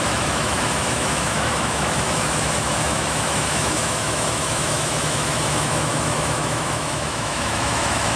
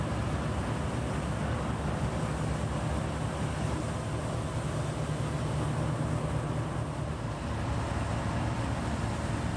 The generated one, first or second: first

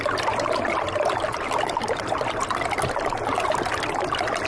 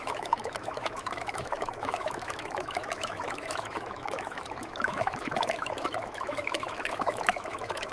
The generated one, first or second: second